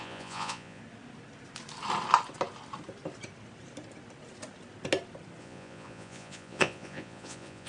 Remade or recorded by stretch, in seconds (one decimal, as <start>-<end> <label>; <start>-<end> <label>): 0.0-0.8 remade; 0.8-5.4 recorded; 5.4-7.7 remade